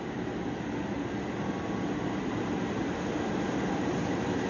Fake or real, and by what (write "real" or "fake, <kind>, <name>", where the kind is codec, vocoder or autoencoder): real